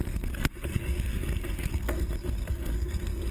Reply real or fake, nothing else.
fake